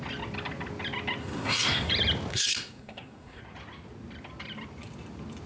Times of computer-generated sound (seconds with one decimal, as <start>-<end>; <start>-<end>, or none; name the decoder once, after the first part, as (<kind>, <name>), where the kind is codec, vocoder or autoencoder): 1.2-1.9 (codec, SNAC); 2.3-3.4

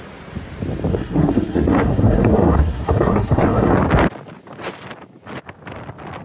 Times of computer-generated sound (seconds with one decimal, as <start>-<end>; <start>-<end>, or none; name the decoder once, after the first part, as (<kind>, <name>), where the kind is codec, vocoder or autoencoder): 0.9-3.7 (codec, SNAC)